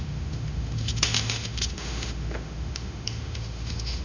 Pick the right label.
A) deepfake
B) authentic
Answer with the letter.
A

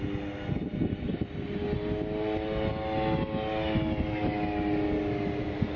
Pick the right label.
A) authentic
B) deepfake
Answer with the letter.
A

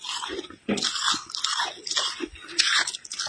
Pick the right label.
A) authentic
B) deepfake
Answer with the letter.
A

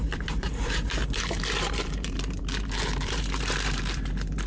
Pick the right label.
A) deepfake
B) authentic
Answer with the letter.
A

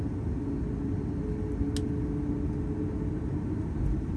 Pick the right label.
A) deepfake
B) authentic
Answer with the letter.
B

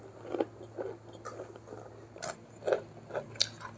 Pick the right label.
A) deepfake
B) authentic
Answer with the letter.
B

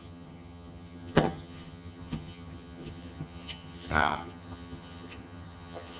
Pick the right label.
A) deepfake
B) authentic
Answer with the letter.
A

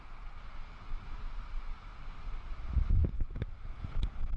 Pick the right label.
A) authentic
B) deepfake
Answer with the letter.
A